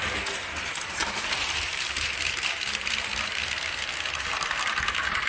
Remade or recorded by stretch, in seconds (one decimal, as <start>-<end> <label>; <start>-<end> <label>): 0.0-3.1 remade; 3.1-4.4 recorded; 4.4-5.3 remade